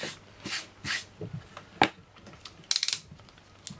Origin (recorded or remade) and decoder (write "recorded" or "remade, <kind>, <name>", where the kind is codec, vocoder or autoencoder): recorded